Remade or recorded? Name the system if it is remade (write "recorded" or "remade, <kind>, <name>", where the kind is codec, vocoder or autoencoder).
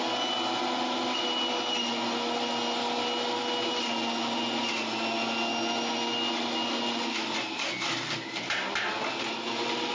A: recorded